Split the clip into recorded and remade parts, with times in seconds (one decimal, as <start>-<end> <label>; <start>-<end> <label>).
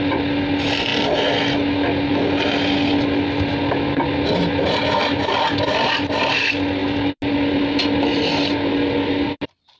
0.0-9.8 recorded